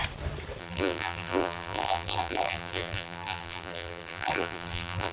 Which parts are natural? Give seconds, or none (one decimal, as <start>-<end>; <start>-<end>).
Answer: 0.0-0.6